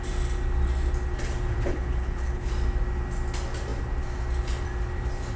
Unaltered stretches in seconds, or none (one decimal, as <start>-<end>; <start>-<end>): 0.0-1.7; 2.5-5.4